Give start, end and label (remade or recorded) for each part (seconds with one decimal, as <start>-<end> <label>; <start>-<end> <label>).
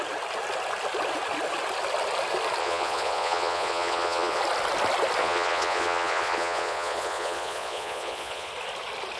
0.0-2.6 recorded; 2.6-4.4 remade; 4.4-5.2 recorded; 5.2-8.5 remade; 8.5-9.2 recorded